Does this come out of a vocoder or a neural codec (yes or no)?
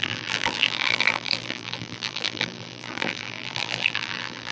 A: yes